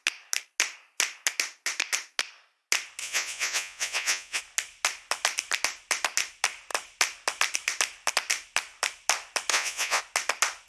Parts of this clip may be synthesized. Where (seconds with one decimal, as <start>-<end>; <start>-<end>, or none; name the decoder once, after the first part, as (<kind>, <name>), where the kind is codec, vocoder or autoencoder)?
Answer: 3.0-4.4 (vocoder, Vocos); 9.5-10.0